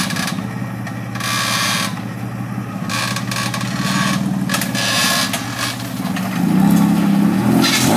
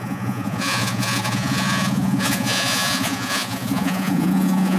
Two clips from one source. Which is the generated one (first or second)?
second